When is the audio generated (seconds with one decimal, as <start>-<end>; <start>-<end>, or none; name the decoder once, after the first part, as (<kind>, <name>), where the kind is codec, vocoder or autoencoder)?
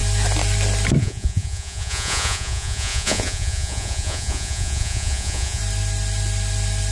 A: 1.0-5.6 (vocoder, Vocos)